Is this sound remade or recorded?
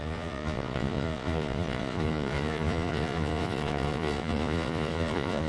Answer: remade